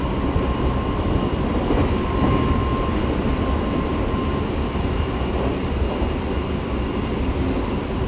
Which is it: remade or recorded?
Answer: recorded